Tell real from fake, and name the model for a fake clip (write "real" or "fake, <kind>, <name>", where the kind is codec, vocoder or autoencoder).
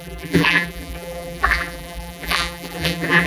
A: fake, vocoder, BigVGAN v2